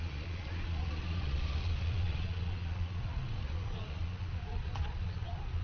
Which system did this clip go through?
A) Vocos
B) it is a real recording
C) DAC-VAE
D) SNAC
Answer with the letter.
A